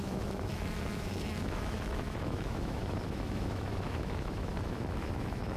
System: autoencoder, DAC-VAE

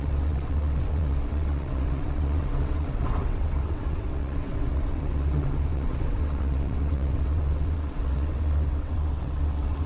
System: vocoder, WaveNeXt